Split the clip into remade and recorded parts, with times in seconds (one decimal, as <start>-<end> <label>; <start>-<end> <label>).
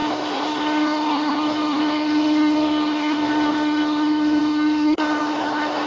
0.0-5.9 remade